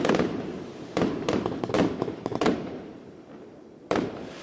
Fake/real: fake